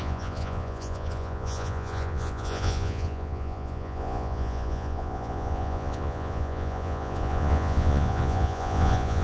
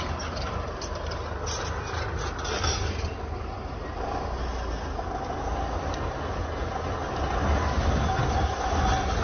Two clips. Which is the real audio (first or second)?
second